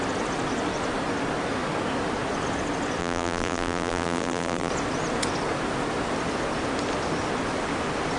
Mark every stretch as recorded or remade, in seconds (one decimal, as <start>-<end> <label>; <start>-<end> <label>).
0.0-3.0 recorded; 3.0-4.7 remade; 4.7-8.2 recorded